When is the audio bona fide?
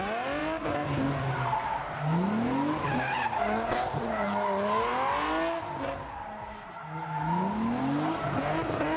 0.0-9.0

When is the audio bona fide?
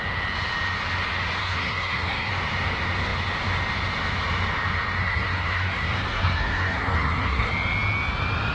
0.0-1.4; 2.3-5.0; 7.5-8.5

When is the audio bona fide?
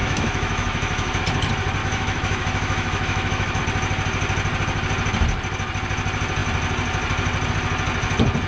1.2-1.8; 3.6-8.5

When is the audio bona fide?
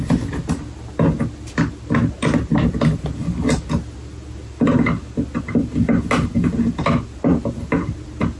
0.0-8.4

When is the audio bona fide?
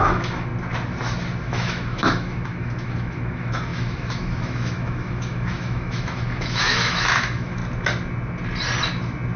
0.5-1.4; 7.6-9.4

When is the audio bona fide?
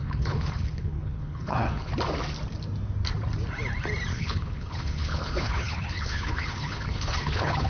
1.9-4.1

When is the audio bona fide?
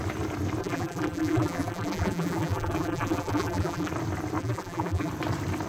0.0-0.6; 3.9-4.4; 5.1-5.7